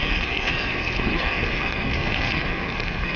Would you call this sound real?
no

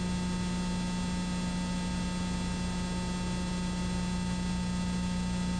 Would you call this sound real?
yes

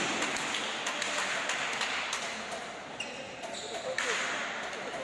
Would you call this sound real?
yes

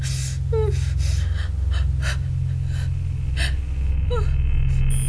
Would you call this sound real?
yes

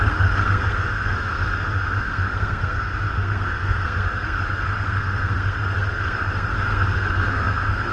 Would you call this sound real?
no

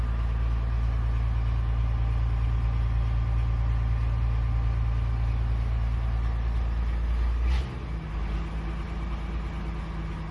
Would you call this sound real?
yes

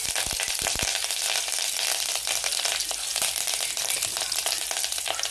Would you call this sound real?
yes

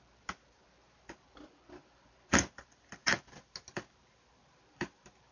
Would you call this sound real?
yes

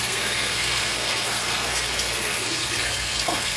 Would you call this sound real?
no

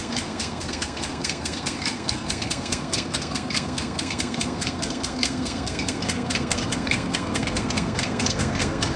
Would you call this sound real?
no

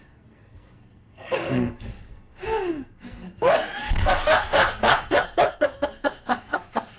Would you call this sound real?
no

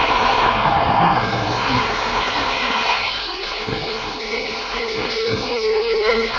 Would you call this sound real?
no